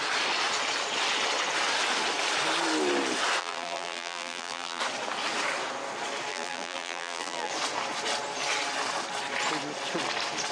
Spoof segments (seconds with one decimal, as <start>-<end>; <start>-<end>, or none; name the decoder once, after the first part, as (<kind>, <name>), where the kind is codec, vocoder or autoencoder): 3.4-4.8 (vocoder, BigVGAN v2); 6.3-7.5